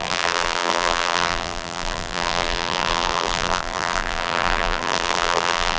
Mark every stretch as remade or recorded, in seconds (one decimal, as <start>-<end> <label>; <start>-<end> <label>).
0.0-5.8 remade